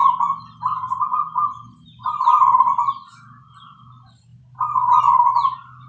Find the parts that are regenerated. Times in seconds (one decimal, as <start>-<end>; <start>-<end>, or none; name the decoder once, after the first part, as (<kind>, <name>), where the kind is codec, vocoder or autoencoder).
none